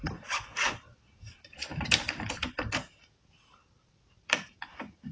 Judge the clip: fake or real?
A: fake